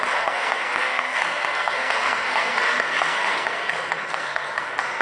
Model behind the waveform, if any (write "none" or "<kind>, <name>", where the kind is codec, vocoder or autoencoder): codec, SNAC